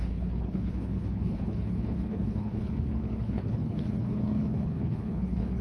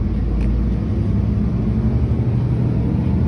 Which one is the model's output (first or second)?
first